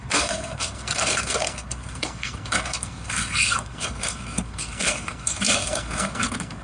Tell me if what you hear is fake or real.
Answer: fake